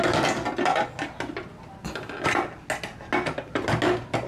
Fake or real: real